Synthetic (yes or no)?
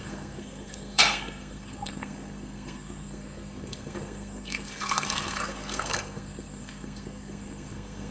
yes